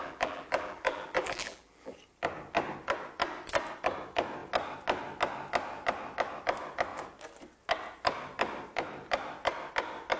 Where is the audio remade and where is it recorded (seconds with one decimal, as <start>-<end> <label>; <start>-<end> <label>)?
0.0-2.0 remade; 2.0-10.2 recorded